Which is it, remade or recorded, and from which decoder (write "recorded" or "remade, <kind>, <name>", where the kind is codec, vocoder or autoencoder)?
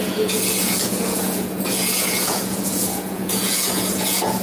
remade, vocoder, Vocos